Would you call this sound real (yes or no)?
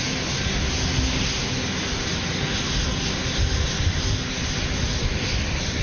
yes